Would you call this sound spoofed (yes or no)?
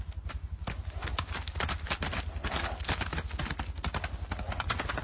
no